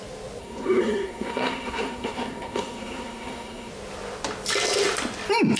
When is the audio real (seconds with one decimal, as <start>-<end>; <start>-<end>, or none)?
0.0-0.4; 3.7-5.6